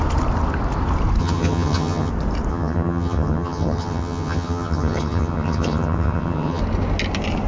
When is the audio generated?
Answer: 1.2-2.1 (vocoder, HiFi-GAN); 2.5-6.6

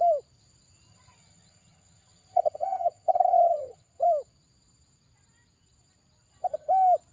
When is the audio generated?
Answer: 0.9-4.0 (vocoder, HiFi-GAN)

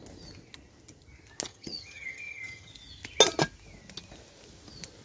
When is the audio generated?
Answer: 1.5-2.7 (vocoder, HiFi-GAN)

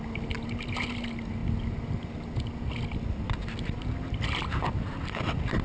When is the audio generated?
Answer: none

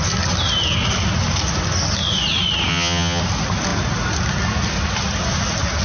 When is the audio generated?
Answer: 2.7-3.2 (vocoder, HiFi-GAN)

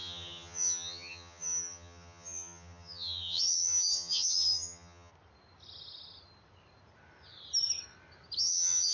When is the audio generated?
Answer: 0.0-5.1 (vocoder, HiFi-GAN); 8.4-8.9